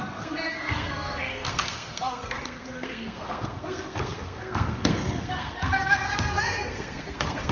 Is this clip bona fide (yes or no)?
no